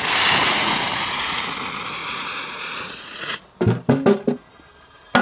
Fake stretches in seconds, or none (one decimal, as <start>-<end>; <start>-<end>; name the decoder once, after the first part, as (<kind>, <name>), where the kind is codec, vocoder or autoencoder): 0.4-1.4 (vocoder, Vocos); 2.0-3.4